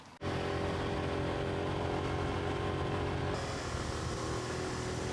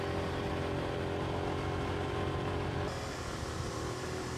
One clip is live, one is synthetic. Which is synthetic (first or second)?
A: second